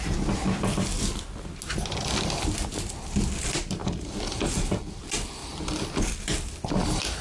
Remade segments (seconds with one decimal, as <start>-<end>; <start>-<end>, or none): 3.8-5.0; 5.4-6.2